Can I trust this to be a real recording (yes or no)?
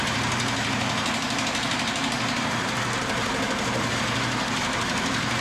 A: yes